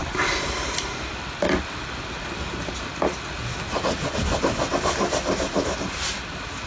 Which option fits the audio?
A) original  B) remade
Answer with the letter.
A